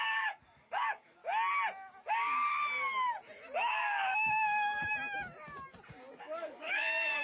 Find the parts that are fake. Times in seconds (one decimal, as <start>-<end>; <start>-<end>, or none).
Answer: 0.0-1.2; 2.1-2.5; 3.7-4.8; 6.2-7.2